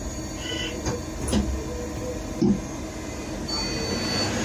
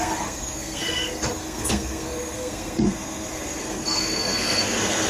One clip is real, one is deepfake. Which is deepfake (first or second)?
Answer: second